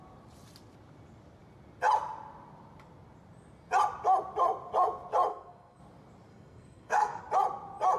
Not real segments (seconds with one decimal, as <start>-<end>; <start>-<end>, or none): 5.3-5.8; 6.3-7.2